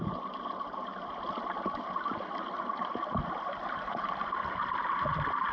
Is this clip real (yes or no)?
yes